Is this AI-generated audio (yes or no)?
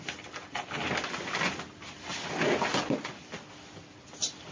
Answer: no